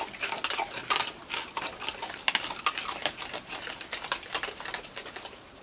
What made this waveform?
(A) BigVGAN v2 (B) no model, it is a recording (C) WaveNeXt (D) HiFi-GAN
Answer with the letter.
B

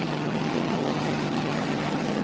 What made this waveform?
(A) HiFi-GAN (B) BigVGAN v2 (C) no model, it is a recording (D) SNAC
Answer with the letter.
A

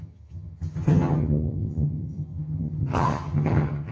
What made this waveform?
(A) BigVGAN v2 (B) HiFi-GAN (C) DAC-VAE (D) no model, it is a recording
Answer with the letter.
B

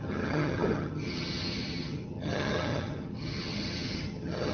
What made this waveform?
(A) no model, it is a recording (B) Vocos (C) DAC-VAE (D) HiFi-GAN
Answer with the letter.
D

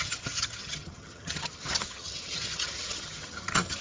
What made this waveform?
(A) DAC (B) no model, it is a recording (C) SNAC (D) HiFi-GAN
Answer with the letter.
D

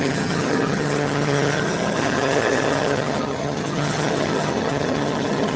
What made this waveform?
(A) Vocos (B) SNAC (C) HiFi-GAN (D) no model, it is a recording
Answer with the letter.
C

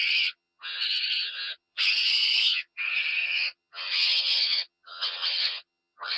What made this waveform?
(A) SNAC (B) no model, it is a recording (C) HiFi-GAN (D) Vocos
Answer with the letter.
C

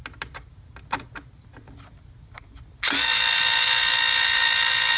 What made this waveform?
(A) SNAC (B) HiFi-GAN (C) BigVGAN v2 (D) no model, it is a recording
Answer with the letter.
D